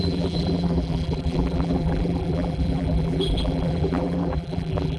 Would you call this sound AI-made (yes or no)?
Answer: yes